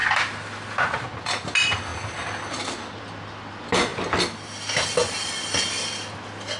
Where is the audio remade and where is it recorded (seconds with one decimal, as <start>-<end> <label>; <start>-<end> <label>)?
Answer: 0.0-6.6 recorded